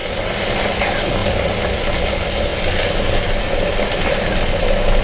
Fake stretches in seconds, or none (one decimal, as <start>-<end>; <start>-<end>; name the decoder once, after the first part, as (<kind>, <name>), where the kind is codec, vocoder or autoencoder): none